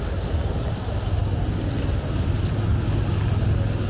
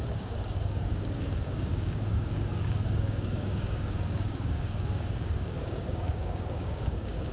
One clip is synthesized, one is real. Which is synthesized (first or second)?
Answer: second